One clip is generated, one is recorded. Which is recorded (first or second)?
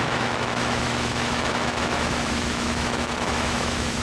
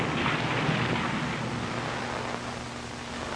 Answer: second